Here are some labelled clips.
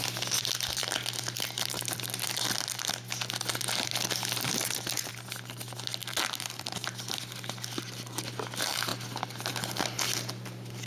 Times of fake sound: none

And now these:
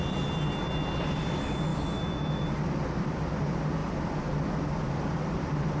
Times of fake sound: 1.7-2.4